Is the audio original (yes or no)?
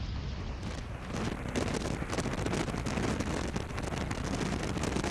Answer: yes